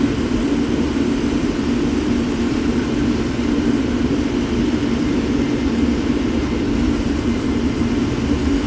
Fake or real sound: real